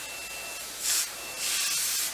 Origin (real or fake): real